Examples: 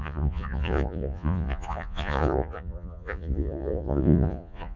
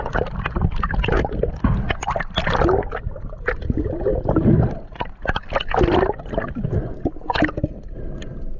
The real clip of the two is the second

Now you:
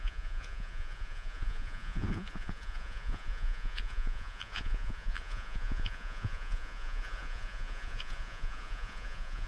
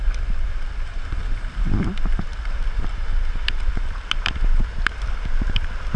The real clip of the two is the second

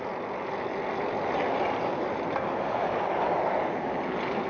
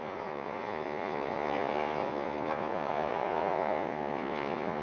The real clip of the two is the first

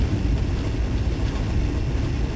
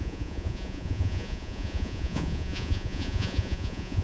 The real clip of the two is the first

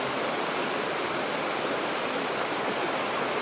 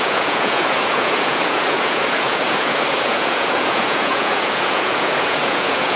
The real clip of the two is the first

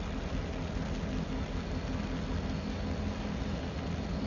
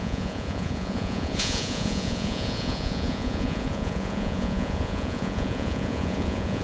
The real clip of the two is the first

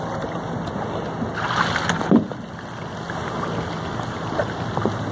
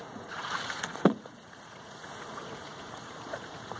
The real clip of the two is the first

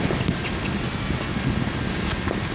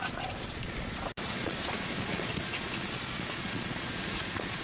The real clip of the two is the first